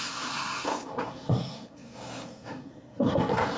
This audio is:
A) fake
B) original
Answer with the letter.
A